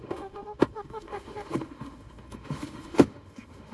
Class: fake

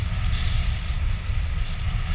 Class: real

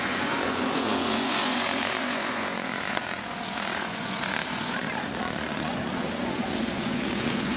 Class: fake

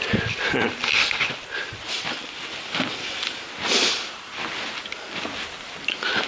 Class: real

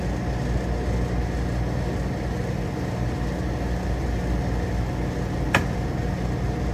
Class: real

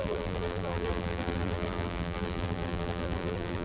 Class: fake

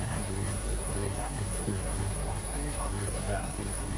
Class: fake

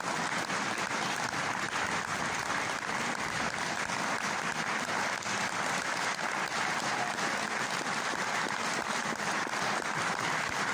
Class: real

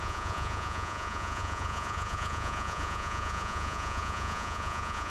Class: fake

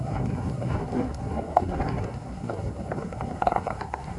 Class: fake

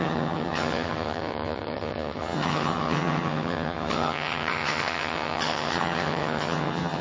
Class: fake